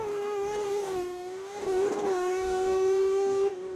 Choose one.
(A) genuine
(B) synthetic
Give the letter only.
B